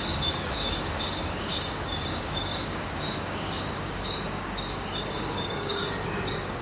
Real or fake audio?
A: fake